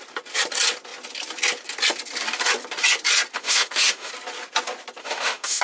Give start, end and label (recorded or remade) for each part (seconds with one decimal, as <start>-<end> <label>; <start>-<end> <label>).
0.0-3.4 recorded; 3.4-4.1 remade; 4.1-5.0 recorded; 5.0-5.6 remade